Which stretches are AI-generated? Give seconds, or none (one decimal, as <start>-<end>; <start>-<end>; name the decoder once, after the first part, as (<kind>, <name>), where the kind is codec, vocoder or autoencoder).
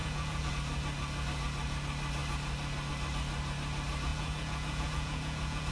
0.0-0.5 (vocoder, Vocos); 4.1-5.7